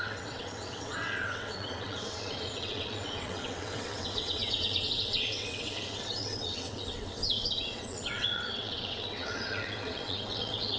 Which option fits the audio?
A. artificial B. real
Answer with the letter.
A